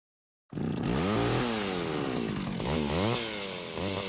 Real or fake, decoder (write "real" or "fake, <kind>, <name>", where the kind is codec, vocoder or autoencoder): real